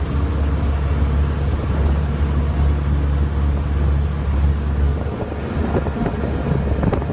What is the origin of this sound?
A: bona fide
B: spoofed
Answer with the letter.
A